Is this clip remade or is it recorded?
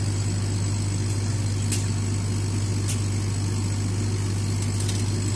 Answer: recorded